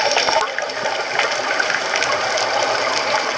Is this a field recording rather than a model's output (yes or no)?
yes